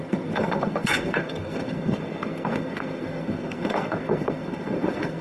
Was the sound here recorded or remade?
remade